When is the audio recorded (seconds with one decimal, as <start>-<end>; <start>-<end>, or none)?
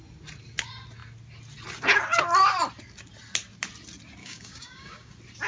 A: 0.0-4.2; 5.1-5.5